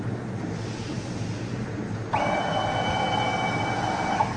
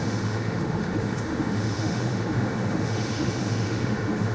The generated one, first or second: second